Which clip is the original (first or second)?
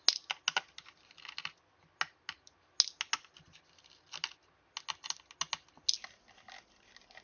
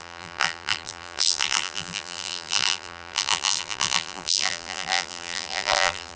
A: first